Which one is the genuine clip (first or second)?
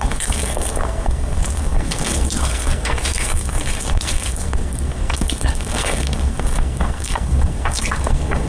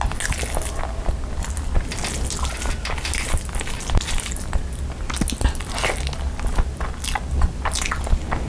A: second